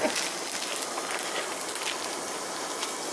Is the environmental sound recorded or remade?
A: recorded